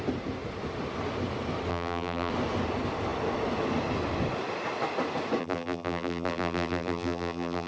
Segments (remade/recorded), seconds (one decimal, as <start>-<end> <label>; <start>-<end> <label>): 0.0-1.7 recorded; 1.7-2.3 remade; 2.3-5.4 recorded; 5.4-7.7 remade